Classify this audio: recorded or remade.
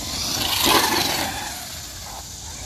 recorded